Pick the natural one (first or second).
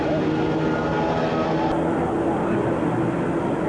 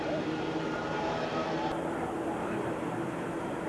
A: first